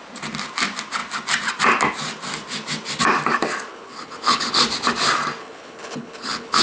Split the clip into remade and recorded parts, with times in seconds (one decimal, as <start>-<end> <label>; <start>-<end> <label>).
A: 0.0-3.7 recorded; 3.7-4.6 remade; 4.6-5.4 recorded; 5.4-6.6 remade